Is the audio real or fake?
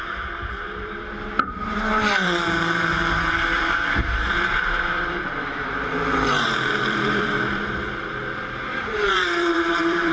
fake